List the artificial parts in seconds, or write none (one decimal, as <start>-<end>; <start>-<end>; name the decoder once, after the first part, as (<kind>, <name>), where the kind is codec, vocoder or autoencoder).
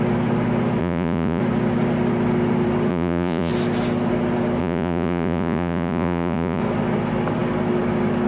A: 0.8-1.4 (vocoder, Vocos); 2.9-3.5; 4.6-6.6